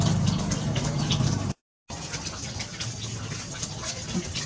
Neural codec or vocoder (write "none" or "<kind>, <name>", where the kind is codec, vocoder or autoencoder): none